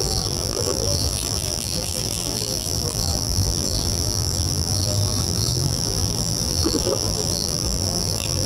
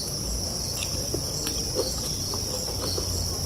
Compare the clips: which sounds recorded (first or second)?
second